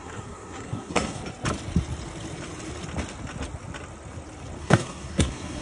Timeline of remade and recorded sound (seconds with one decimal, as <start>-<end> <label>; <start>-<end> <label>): 0.0-1.2 remade; 1.2-4.6 recorded; 4.6-5.6 remade